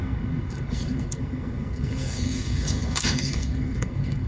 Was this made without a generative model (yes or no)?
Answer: no